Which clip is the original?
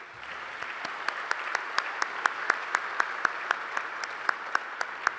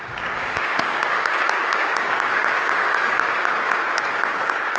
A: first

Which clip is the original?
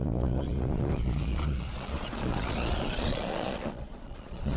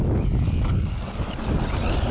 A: second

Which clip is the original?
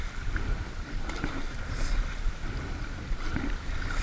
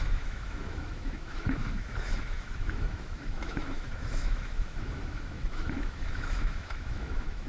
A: first